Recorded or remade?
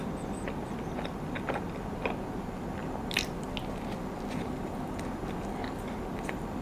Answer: recorded